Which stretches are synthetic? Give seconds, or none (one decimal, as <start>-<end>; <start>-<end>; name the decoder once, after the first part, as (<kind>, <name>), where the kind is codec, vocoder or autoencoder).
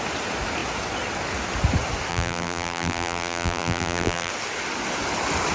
2.1-4.3 (vocoder, BigVGAN v2)